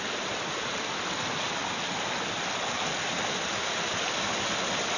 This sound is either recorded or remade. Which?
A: recorded